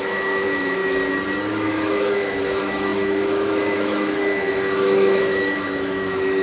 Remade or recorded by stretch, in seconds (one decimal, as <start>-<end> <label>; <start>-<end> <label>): 0.0-0.8 remade; 0.8-1.5 recorded; 1.5-6.4 remade